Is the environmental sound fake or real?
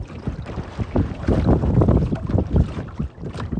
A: real